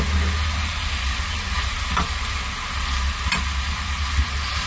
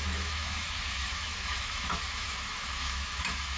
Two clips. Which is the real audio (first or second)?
first